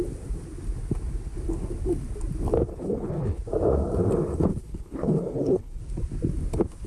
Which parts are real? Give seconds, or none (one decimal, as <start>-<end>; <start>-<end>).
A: 0.0-2.7; 3.4-4.5; 5.8-6.9